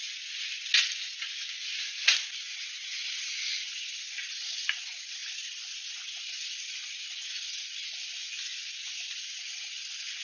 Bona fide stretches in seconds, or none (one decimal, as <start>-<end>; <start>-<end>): 0.0-10.2